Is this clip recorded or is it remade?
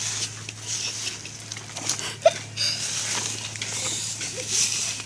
recorded